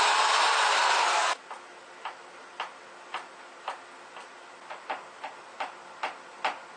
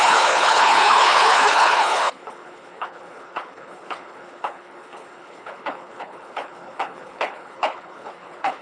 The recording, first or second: first